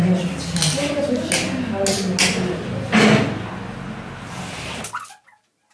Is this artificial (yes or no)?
no